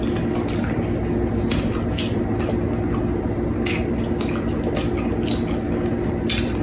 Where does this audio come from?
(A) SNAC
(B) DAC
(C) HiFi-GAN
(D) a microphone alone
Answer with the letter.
D